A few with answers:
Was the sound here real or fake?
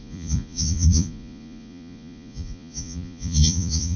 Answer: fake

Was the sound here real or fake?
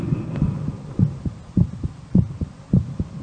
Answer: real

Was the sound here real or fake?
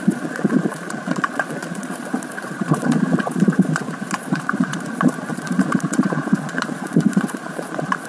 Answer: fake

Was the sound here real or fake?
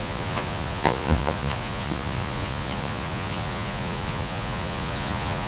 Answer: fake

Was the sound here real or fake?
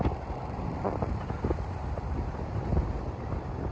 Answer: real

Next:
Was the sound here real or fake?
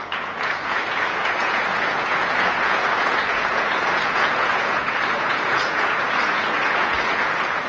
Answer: fake